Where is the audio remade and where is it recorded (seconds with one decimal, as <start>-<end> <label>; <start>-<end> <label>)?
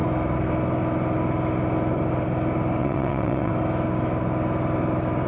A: 0.0-2.8 recorded; 2.8-3.5 remade; 3.5-5.3 recorded